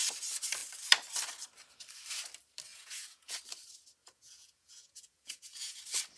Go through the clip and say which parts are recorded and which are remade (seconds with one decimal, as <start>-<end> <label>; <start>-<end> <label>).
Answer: 0.0-2.7 recorded; 2.7-3.4 remade; 3.4-4.0 recorded; 4.0-5.8 remade; 5.8-6.2 recorded